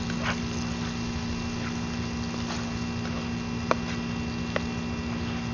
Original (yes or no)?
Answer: yes